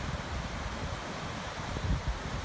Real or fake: fake